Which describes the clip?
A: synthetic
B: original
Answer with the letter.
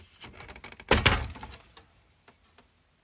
B